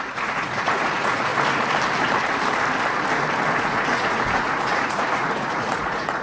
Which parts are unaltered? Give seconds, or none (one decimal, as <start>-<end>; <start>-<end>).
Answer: 1.3-3.6